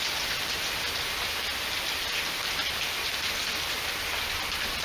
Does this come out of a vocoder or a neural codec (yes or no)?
no